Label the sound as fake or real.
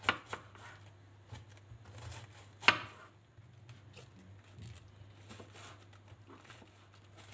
real